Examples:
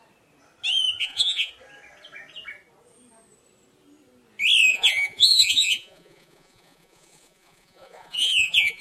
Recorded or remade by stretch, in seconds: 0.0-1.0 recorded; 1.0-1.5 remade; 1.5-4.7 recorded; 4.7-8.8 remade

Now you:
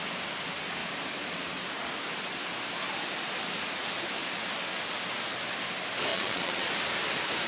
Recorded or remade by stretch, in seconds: 0.0-6.1 recorded; 6.1-6.7 remade; 6.7-7.5 recorded

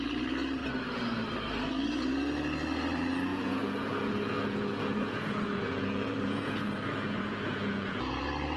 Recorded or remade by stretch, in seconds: 0.0-3.3 recorded; 3.3-8.2 remade; 8.2-8.6 recorded